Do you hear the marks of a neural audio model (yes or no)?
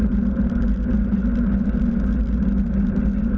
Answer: no